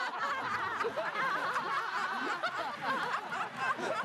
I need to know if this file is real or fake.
real